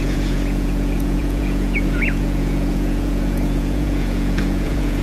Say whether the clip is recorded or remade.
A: remade